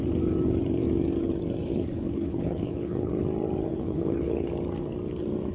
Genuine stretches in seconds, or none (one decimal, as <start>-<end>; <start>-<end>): 0.0-1.7; 3.1-3.7; 4.5-5.5